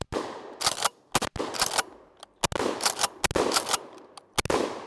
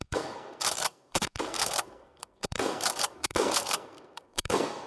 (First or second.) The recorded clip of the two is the first